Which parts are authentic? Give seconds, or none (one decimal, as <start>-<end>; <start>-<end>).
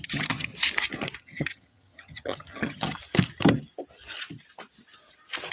0.5-1.2; 3.0-5.5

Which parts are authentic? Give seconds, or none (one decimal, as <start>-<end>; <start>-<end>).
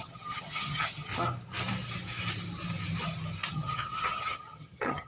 1.1-3.5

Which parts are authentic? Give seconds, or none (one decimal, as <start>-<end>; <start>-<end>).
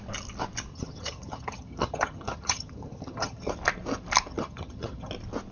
0.0-0.7; 3.5-4.3; 5.1-5.5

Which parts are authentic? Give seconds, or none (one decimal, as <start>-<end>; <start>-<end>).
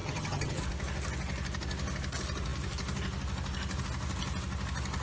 0.6-5.0